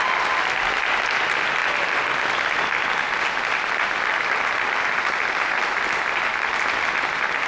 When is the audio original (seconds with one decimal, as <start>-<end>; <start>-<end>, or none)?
0.0-7.5